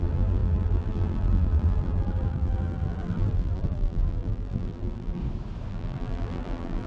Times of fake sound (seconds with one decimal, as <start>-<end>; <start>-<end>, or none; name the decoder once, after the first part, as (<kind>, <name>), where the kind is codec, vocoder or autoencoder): 0.0-5.2 (vocoder, BigVGAN v2); 5.7-6.9